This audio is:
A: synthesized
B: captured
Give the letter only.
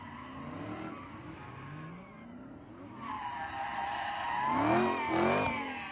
B